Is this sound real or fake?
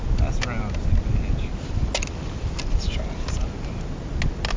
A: real